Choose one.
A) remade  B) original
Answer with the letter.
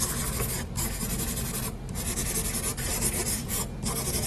B